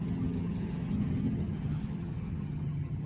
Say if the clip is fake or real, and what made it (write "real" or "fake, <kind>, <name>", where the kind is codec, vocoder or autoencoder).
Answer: fake, vocoder, HiFi-GAN